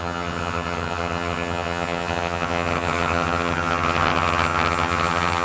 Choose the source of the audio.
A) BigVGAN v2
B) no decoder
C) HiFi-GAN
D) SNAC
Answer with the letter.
C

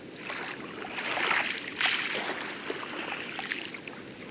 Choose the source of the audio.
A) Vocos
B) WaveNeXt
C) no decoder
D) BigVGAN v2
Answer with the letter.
C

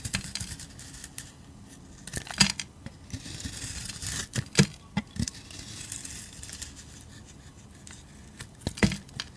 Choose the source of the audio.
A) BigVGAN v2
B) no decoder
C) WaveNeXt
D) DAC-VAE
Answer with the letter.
B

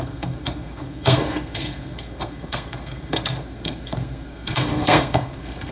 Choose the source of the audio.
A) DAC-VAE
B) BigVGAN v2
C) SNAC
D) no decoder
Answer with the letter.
C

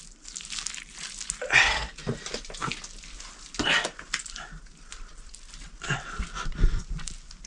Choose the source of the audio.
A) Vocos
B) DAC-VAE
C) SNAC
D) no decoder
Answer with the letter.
D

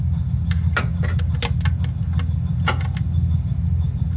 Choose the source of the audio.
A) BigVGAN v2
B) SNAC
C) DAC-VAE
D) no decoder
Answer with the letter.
D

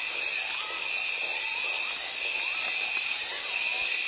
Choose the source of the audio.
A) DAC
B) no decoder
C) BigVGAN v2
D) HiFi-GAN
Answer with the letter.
B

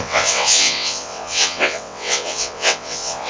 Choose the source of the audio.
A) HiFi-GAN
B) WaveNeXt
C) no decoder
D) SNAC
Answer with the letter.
B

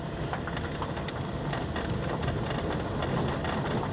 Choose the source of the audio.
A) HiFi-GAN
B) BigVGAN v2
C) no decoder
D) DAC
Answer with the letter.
C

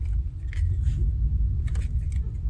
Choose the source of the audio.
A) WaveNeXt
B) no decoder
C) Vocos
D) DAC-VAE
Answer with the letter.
B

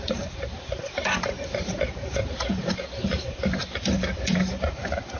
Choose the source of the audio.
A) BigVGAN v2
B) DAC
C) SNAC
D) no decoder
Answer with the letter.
A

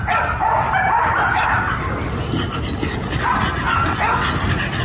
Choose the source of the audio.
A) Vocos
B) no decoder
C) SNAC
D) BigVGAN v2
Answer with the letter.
B